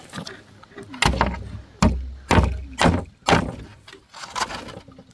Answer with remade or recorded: recorded